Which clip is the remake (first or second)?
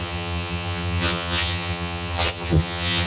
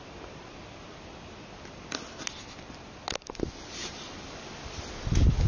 first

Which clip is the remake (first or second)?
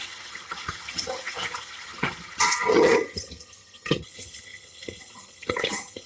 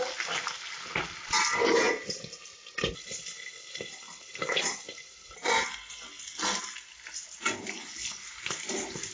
first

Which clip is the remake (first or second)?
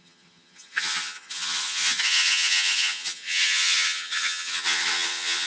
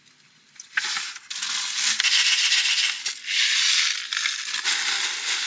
first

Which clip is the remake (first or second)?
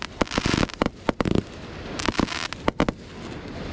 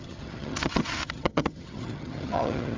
second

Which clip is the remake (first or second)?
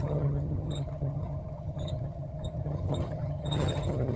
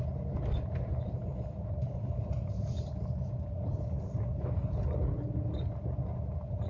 first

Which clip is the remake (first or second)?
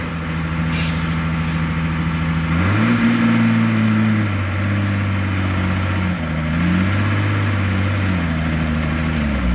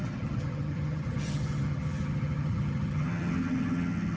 second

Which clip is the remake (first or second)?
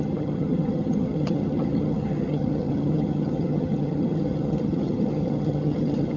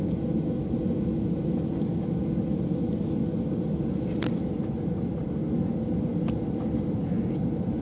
first